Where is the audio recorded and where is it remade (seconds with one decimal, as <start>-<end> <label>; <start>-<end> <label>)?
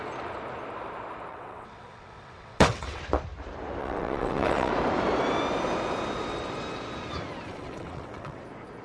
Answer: 0.0-1.3 recorded; 1.3-3.0 remade; 3.0-3.8 recorded; 3.8-4.7 remade; 4.7-7.5 recorded; 7.5-8.4 remade; 8.4-8.8 recorded